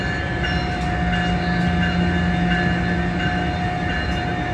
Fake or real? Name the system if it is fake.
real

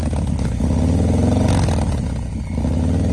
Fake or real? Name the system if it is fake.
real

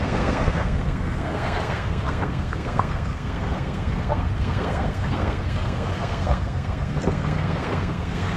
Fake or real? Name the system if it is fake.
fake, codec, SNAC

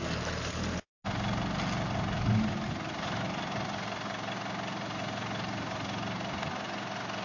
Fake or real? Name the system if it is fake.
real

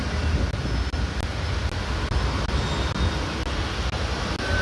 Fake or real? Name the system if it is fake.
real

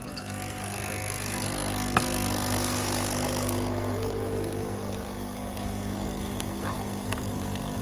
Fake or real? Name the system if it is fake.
fake, codec, SNAC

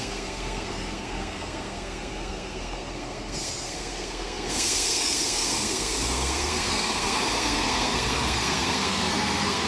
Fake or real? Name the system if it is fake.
fake, codec, SNAC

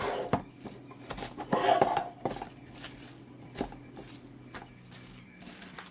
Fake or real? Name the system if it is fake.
real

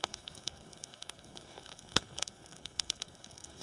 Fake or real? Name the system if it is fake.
fake, codec, SNAC